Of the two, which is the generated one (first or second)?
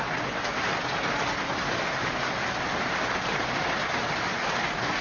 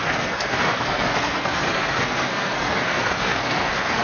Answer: second